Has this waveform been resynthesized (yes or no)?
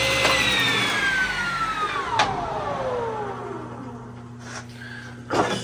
no